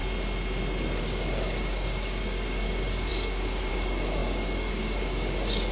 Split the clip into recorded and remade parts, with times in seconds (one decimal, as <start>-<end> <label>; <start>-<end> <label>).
0.0-1.0 recorded; 1.0-5.7 remade